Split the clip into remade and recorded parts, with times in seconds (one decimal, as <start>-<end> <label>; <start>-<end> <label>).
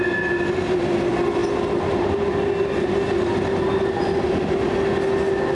0.0-5.5 recorded